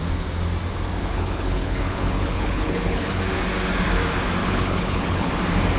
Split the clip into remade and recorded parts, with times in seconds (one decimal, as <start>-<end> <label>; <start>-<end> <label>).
0.0-1.0 recorded; 1.0-3.2 remade; 3.2-4.4 recorded; 4.4-5.3 remade; 5.3-5.8 recorded